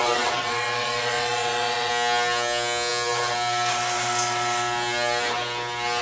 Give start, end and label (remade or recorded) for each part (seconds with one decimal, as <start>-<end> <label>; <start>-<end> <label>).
0.0-1.9 remade; 1.9-6.0 recorded